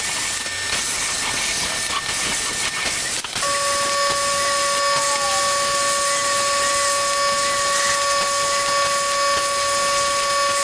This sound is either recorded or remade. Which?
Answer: recorded